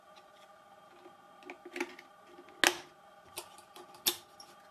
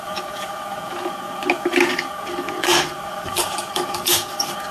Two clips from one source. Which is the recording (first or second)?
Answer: first